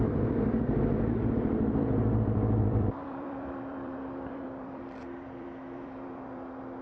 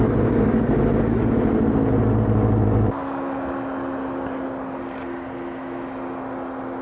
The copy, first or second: first